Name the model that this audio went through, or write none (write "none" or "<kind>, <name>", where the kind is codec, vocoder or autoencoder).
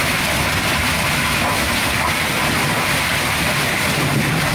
none